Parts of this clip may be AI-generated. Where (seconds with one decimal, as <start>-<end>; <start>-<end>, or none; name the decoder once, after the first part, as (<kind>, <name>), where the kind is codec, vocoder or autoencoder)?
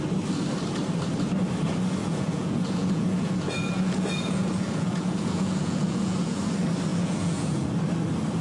2.0-6.5 (vocoder, Vocos); 6.9-7.7